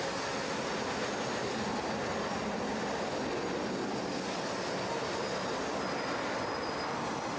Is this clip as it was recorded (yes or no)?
yes